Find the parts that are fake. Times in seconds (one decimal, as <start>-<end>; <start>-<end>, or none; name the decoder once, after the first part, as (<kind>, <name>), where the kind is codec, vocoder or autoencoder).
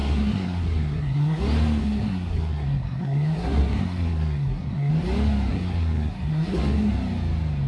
0.0-1.4 (codec, SNAC); 1.8-4.9; 5.5-6.9